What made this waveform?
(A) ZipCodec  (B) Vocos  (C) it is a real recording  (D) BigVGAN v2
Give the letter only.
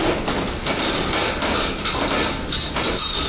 C